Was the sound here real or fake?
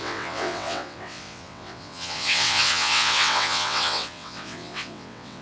fake